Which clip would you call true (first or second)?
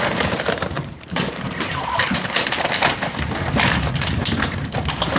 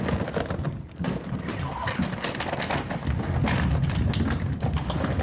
second